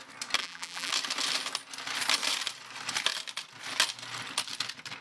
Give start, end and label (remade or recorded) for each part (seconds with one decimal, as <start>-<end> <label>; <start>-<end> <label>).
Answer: 0.0-0.4 recorded; 0.4-0.9 remade; 0.9-5.0 recorded

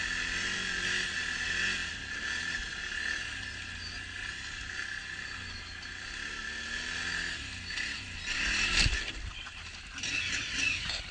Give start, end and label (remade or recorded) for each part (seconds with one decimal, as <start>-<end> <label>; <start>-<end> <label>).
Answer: 0.0-11.1 recorded